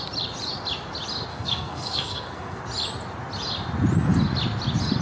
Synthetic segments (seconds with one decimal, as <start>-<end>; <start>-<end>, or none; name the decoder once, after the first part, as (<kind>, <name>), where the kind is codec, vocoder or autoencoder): 1.3-2.6 (codec, SNAC)